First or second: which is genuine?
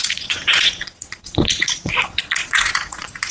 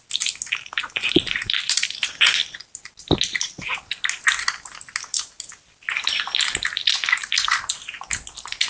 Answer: second